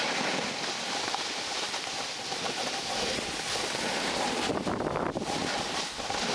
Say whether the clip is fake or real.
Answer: real